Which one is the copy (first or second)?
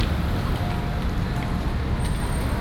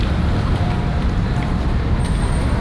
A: second